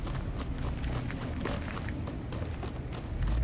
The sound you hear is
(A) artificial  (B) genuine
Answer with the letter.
B